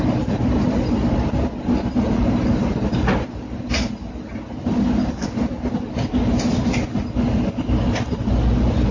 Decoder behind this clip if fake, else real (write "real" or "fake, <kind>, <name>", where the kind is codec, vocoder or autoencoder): real